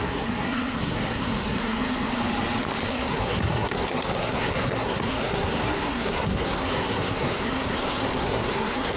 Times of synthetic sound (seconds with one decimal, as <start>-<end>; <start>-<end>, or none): 0.0-2.2; 2.9-9.0